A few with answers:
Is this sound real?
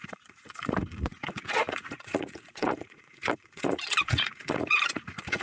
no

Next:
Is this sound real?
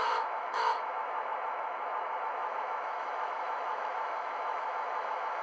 no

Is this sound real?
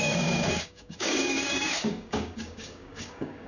no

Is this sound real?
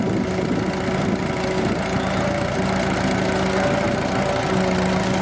yes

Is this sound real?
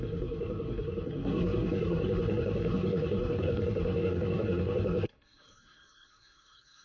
no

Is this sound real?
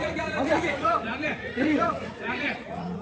no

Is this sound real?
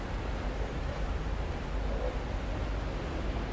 yes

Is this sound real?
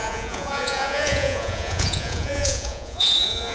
no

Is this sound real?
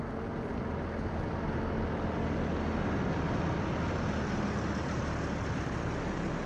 yes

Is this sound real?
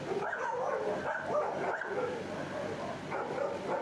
yes